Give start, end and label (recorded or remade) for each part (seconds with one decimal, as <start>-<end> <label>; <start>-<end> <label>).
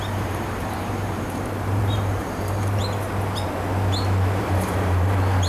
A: 0.0-2.8 remade; 2.8-4.4 recorded; 4.4-5.5 remade